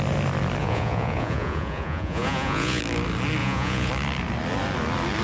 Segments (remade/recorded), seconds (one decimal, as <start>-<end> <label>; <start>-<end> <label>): 0.0-0.6 recorded; 0.6-2.8 remade; 2.8-3.4 recorded; 3.4-3.9 remade; 3.9-5.2 recorded